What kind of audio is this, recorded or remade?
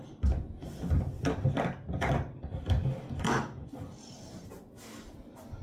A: recorded